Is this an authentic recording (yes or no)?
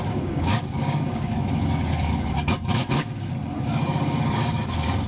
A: no